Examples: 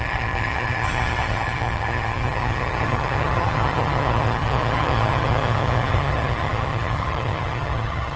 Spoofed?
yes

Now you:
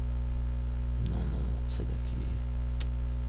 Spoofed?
no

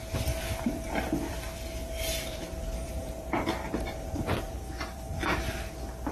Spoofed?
yes